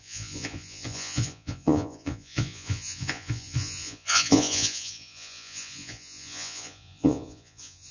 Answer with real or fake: fake